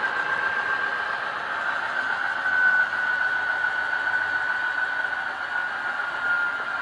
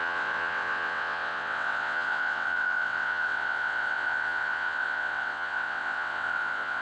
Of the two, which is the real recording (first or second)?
first